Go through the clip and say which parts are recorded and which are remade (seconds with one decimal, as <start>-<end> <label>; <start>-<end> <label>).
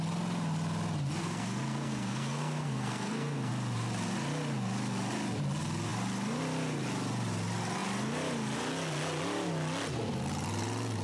0.0-1.2 recorded; 1.2-3.5 remade; 3.5-11.0 recorded